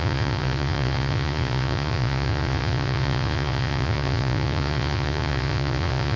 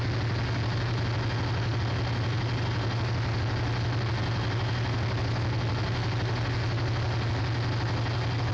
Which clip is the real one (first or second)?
second